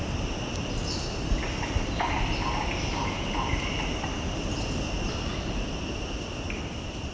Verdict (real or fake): real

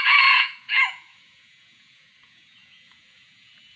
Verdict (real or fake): fake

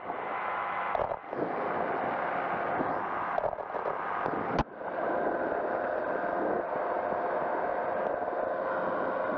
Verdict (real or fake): real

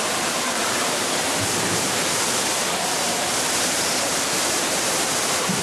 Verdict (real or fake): fake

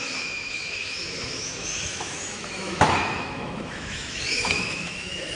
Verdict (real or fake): fake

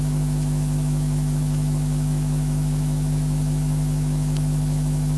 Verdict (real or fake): fake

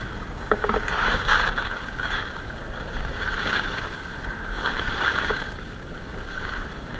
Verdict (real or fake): fake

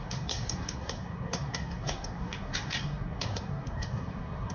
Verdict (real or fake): fake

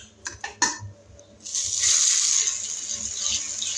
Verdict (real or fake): real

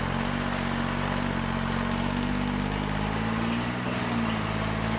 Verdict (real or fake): real